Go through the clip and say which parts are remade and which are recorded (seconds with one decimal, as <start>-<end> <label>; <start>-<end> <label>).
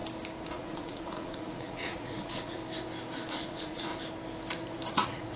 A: 0.0-0.5 recorded; 0.5-2.6 remade; 2.6-3.3 recorded; 3.3-3.9 remade; 3.9-4.9 recorded; 4.9-5.4 remade